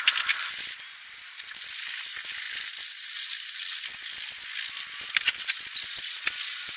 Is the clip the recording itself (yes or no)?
yes